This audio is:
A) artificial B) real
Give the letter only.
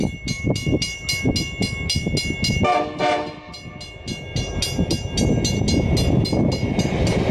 B